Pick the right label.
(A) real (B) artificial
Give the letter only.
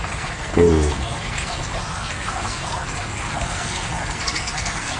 B